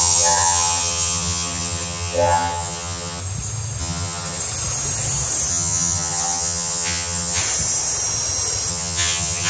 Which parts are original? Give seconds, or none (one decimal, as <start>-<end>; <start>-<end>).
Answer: 3.2-3.8; 4.4-5.5; 7.4-8.7